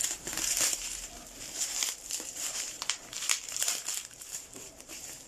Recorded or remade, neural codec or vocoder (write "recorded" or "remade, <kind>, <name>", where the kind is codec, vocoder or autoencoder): remade, vocoder, BigVGAN v2